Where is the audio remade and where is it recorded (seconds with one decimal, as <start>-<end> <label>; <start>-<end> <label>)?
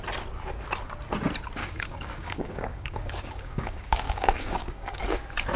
0.0-1.6 recorded; 1.6-5.0 remade; 5.0-5.6 recorded